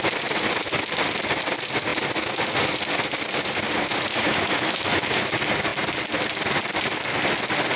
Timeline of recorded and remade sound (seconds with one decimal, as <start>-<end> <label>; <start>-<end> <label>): 0.0-4.1 recorded; 4.1-5.3 remade; 5.3-7.8 recorded

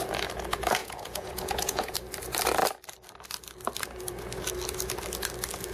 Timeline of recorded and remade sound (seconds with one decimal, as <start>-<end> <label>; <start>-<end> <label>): 0.0-0.8 recorded; 0.8-1.9 remade; 1.9-5.7 recorded